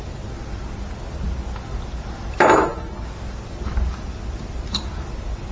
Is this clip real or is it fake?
real